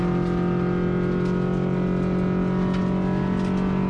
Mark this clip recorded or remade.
recorded